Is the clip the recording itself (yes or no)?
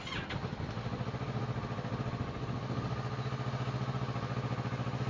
yes